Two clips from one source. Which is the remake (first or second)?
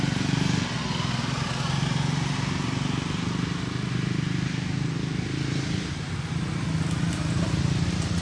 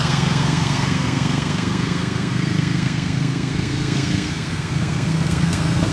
second